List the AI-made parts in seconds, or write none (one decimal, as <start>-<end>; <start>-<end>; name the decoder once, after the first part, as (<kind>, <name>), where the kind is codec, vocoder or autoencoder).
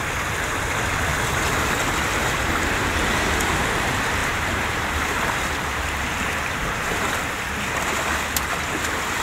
4.2-7.3 (vocoder, BigVGAN v2)